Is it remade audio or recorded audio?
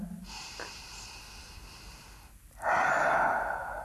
recorded